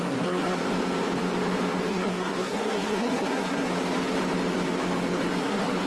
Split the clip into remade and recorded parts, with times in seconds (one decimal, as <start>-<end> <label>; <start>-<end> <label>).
0.0-0.6 remade; 0.6-1.9 recorded; 1.9-3.7 remade; 3.7-5.1 recorded; 5.1-5.9 remade